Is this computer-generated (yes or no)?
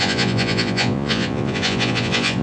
yes